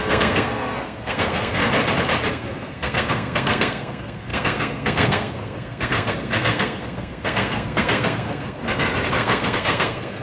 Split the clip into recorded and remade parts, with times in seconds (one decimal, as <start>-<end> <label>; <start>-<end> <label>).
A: 0.0-1.6 remade; 1.6-2.3 recorded; 2.3-8.6 remade; 8.6-9.1 recorded; 9.1-10.2 remade